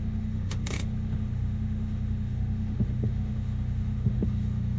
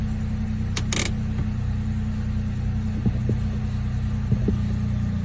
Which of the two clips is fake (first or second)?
first